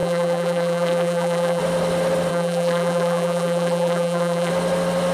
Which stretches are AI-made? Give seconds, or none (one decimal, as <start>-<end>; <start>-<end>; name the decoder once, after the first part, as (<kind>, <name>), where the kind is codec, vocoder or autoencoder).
0.0-1.6 (vocoder, BigVGAN v2); 2.3-4.5